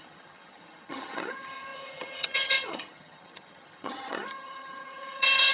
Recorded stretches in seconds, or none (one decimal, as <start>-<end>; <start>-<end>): none